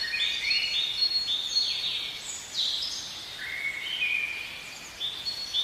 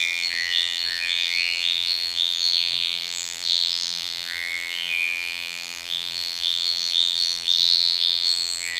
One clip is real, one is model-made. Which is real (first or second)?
first